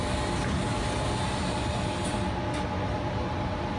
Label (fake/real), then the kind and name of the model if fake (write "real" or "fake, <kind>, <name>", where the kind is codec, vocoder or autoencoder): real